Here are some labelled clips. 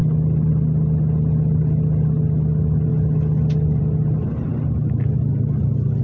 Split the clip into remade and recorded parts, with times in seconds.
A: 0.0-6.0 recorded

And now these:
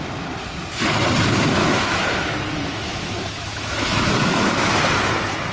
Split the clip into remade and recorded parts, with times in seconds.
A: 0.0-1.6 recorded; 1.6-4.9 remade; 4.9-5.5 recorded

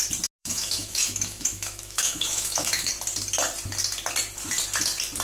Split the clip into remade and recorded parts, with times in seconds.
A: 0.0-0.4 recorded; 0.4-2.9 remade; 2.9-5.2 recorded

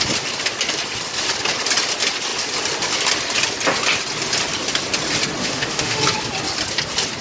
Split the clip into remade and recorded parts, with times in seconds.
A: 0.0-5.4 recorded; 5.4-6.0 remade; 6.0-7.2 recorded

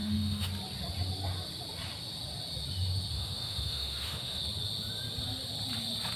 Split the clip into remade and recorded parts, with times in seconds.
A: 0.0-0.5 remade; 0.5-3.1 recorded; 3.1-4.4 remade; 4.4-6.2 recorded

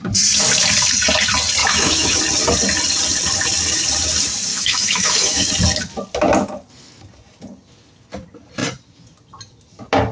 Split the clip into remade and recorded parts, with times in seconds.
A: 0.0-1.6 recorded; 1.6-2.2 remade; 2.2-4.5 recorded; 4.5-5.5 remade; 5.5-10.1 recorded

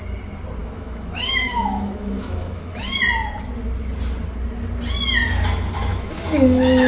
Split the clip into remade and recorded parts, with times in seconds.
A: 0.0-0.6 recorded; 0.6-3.0 remade; 3.0-5.9 recorded; 5.9-6.9 remade